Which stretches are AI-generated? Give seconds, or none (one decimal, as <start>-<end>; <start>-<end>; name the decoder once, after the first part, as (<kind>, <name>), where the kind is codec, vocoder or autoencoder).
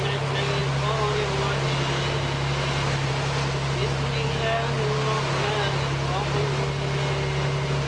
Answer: none